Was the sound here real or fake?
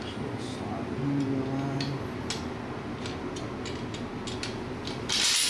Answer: real